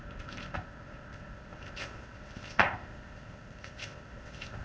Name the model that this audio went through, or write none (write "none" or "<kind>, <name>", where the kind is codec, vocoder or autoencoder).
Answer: codec, ZipCodec